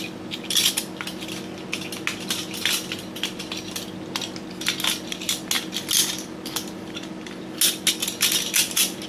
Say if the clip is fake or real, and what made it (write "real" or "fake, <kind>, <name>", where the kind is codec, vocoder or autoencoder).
real